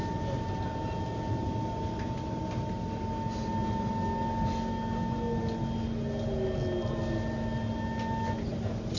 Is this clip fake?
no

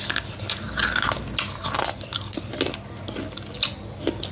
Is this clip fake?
no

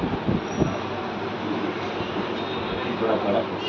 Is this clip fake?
no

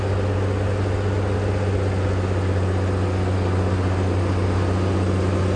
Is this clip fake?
no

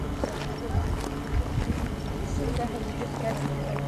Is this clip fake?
no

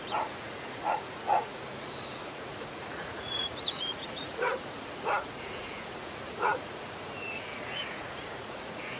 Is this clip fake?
yes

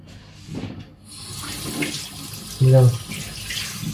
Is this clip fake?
no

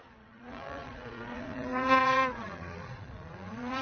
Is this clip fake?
yes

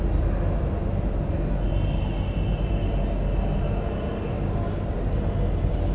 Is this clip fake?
no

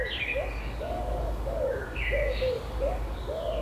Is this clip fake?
yes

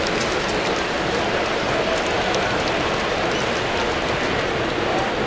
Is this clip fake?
no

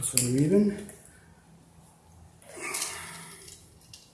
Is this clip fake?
no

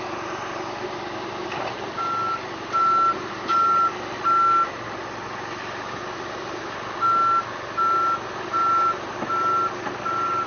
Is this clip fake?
no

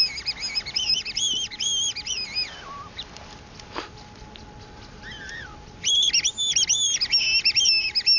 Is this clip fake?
no